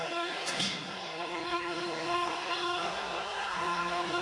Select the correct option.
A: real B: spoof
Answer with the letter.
B